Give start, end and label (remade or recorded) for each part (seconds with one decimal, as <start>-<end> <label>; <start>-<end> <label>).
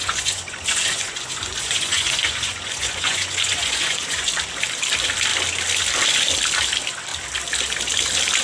0.0-4.3 remade; 4.3-8.4 recorded